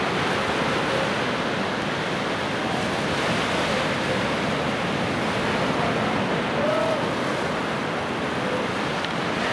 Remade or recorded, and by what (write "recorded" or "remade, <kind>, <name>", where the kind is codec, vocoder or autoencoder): recorded